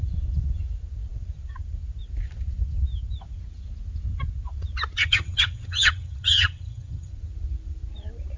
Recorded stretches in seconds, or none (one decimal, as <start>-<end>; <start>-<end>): 0.0-5.0; 7.1-8.4